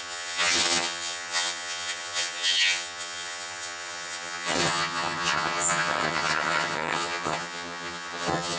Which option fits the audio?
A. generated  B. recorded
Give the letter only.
A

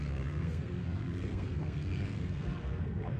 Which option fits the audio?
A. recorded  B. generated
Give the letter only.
B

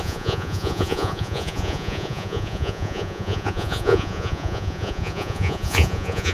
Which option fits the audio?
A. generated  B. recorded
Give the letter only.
A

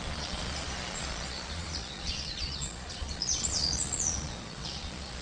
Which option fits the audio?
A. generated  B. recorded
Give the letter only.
A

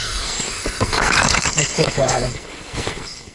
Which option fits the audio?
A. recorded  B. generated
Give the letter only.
B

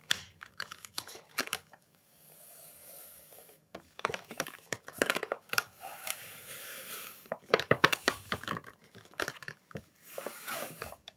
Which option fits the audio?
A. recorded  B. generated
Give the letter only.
B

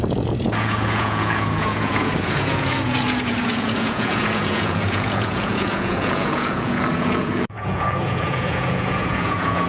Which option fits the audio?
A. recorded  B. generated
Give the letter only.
B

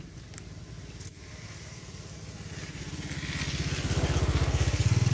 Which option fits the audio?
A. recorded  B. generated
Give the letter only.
A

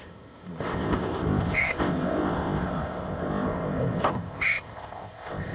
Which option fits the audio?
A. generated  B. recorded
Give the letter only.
A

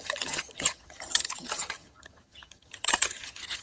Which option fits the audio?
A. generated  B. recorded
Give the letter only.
A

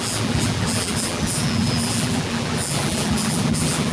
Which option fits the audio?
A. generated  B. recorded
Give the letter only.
A